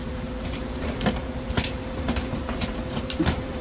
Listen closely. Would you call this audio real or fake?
fake